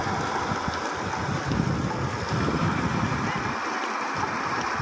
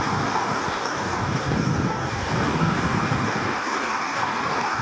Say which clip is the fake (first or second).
second